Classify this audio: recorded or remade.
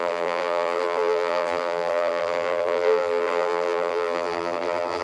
remade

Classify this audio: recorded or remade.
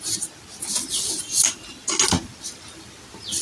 recorded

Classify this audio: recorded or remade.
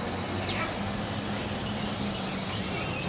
recorded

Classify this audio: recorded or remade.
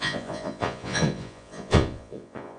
remade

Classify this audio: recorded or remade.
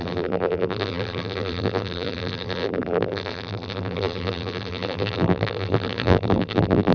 remade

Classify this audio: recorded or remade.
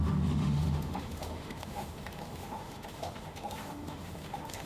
remade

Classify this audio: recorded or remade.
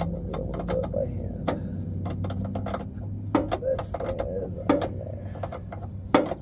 recorded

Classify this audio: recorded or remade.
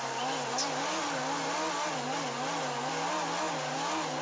recorded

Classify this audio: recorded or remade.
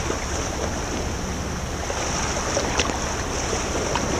recorded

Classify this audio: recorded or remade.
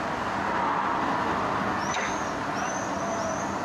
recorded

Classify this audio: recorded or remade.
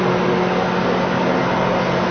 recorded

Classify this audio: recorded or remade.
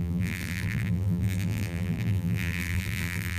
remade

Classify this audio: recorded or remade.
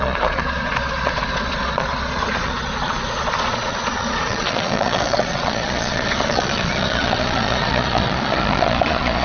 remade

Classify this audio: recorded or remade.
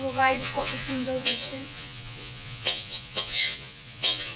remade